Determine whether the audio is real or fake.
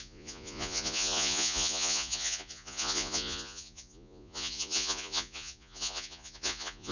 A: fake